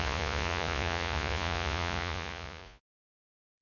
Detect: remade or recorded remade